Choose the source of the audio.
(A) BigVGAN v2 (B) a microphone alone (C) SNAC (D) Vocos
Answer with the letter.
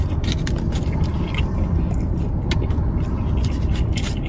A